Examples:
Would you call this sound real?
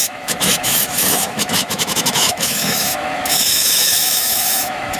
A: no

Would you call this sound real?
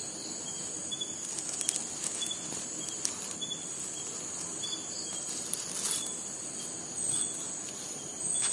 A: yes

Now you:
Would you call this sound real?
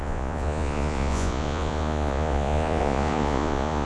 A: no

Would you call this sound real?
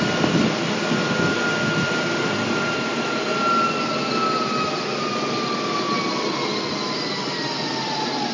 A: yes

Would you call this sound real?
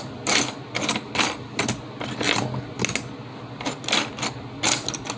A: yes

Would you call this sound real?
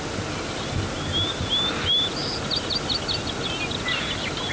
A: yes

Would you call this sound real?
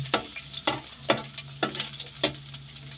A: yes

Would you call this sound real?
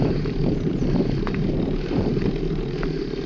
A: no